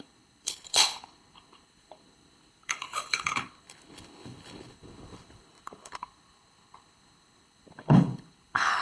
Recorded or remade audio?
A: remade